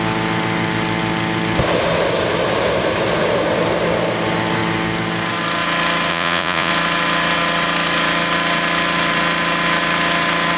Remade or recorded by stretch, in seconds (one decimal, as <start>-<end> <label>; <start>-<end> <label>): 0.0-6.1 recorded; 6.1-6.7 remade; 6.7-10.6 recorded